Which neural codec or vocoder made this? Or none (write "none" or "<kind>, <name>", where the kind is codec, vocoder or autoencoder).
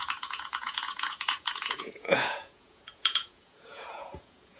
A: vocoder, Vocos